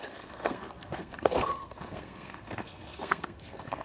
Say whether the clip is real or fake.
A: fake